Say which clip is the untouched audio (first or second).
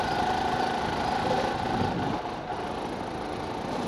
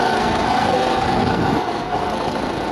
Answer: first